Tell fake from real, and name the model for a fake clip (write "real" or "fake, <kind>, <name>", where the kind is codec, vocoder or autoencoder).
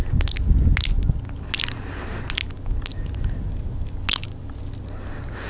real